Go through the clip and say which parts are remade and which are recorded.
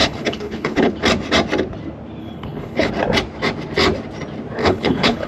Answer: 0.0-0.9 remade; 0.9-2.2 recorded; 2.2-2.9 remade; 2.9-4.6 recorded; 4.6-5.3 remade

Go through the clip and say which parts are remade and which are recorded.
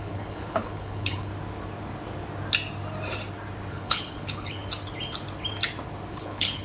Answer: 0.0-1.3 remade; 1.3-3.7 recorded; 3.7-4.6 remade; 4.6-6.1 recorded; 6.1-6.6 remade